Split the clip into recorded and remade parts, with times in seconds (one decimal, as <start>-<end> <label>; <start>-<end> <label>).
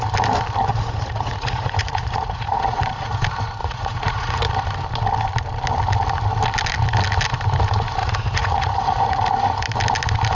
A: 0.0-0.7 recorded; 0.7-3.2 remade; 3.2-3.6 recorded; 3.6-4.4 remade; 4.4-8.0 recorded; 8.0-9.2 remade; 9.2-10.3 recorded